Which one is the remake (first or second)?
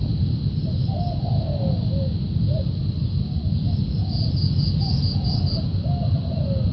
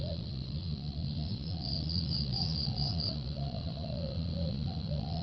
second